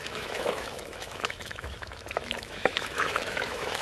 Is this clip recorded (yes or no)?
no